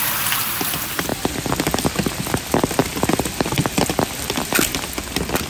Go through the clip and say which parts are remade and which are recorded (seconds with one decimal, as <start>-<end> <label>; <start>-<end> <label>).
0.0-5.5 recorded